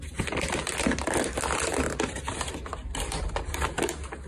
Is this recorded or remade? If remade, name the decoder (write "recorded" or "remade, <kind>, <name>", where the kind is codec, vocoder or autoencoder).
recorded